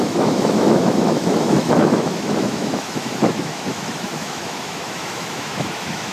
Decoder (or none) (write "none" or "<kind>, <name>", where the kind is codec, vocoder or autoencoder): autoencoder, DAC-VAE